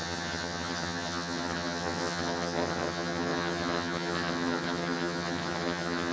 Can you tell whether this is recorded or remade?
remade